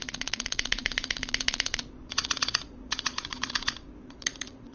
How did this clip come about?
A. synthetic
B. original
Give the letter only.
A